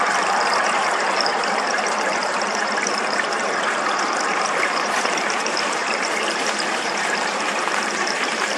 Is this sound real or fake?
fake